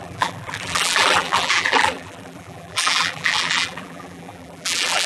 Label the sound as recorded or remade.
remade